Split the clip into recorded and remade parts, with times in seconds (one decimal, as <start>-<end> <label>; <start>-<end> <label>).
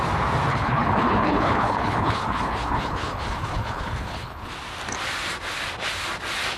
0.0-0.5 recorded; 0.5-4.5 remade; 4.5-6.6 recorded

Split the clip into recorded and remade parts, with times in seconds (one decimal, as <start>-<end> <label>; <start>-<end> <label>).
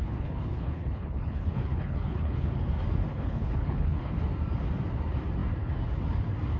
0.0-2.5 remade; 2.5-3.1 recorded; 3.1-4.1 remade; 4.1-6.6 recorded